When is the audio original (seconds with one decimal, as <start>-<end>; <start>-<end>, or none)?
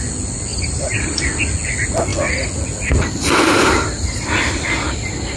0.0-0.5; 1.2-5.4